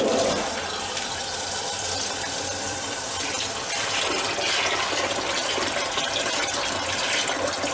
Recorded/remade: remade